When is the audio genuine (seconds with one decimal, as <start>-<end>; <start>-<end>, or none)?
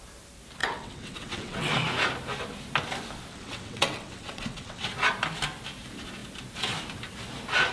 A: 0.0-0.6; 1.7-3.3; 4.9-7.7